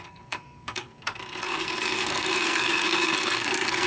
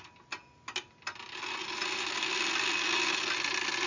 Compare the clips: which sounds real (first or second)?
second